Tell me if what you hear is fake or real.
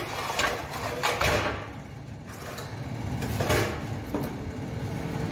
real